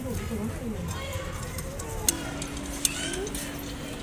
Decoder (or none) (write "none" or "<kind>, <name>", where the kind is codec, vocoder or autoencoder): none